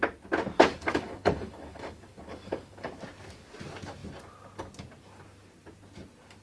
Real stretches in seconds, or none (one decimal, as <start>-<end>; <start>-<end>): 0.0-0.7; 2.9-6.4

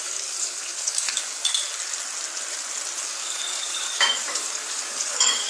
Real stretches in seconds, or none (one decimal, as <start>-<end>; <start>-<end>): 1.4-3.0